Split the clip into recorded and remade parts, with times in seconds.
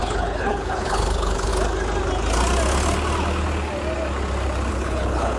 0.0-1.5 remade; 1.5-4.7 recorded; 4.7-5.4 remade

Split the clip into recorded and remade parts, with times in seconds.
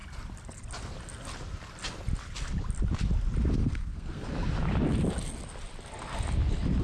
0.0-3.6 recorded; 3.6-4.3 remade; 4.3-6.8 recorded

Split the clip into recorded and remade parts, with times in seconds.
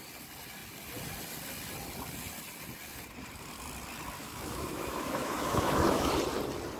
0.0-4.2 recorded; 4.2-6.1 remade; 6.1-6.8 recorded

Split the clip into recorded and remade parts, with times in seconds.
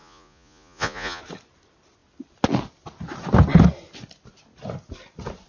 0.0-1.2 remade; 1.2-5.5 recorded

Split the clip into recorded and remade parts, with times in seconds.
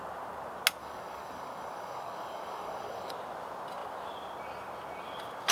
0.0-0.8 recorded; 0.8-3.1 remade; 3.1-5.5 recorded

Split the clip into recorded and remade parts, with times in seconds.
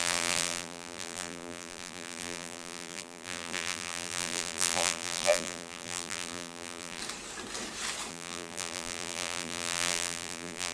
0.0-7.0 remade; 7.0-8.1 recorded; 8.1-10.7 remade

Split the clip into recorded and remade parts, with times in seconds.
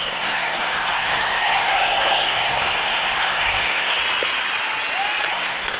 0.0-4.0 remade; 4.0-5.3 recorded; 5.3-5.8 remade